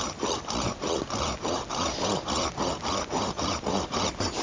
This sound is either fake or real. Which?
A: real